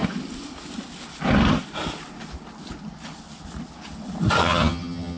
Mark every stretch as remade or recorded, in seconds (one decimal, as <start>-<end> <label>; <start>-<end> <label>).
0.0-4.4 recorded; 4.4-5.2 remade